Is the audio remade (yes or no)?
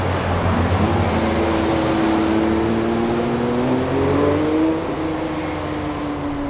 no